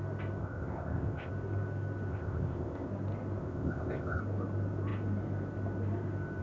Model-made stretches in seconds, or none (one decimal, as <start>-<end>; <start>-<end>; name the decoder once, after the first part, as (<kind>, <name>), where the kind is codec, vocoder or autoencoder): 0.4-1.3 (codec, ZipCodec); 2.1-2.9; 3.4-4.2